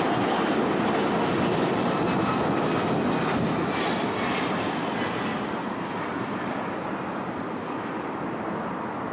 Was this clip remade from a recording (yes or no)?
no